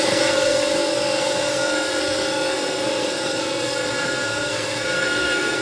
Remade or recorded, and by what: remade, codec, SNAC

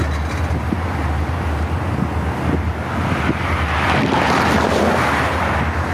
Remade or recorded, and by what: recorded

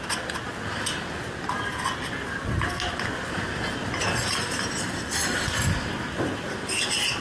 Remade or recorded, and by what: recorded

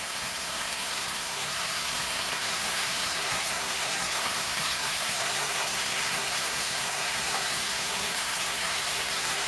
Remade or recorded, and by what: remade, codec, SNAC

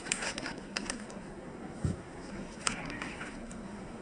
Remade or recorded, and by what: remade, codec, SNAC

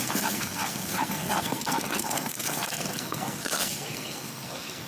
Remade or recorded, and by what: remade, codec, SNAC